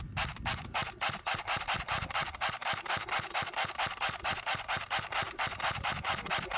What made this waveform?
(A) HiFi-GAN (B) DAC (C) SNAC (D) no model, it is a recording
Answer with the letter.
D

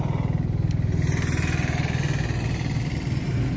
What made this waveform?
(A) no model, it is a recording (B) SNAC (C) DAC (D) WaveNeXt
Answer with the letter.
A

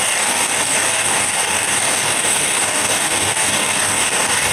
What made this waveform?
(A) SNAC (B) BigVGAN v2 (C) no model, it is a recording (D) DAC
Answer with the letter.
D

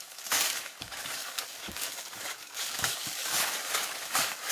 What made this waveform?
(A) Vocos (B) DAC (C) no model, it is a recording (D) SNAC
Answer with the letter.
B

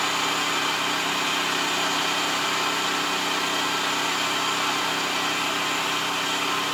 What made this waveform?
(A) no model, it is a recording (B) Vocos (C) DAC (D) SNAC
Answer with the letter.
A